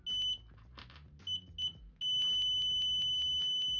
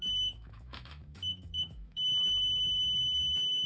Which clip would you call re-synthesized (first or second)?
second